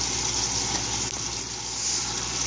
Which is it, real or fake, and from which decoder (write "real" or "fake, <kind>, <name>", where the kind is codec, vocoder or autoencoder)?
real